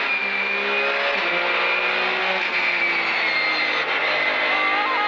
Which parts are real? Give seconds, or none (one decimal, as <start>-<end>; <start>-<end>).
0.0-2.2; 2.8-5.1